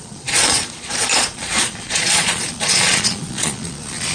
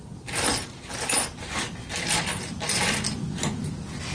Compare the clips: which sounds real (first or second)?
second